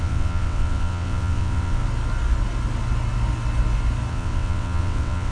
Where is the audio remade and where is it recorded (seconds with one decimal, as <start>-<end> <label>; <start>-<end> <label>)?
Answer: 0.0-1.8 remade; 1.8-4.1 recorded; 4.1-5.3 remade